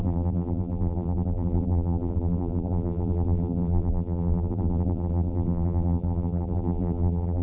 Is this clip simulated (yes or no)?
yes